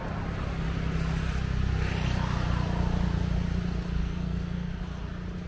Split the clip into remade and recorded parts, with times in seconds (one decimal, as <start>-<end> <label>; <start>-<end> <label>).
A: 0.0-4.0 recorded; 4.0-4.7 remade; 4.7-5.5 recorded